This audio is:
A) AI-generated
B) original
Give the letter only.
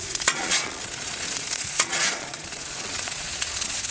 A